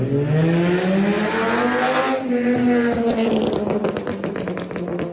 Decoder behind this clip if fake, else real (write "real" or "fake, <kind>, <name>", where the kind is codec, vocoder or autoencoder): real